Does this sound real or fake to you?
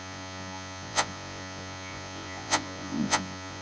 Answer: fake